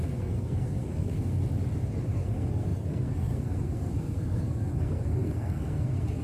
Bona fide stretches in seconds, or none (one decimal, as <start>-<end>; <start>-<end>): 1.4-2.1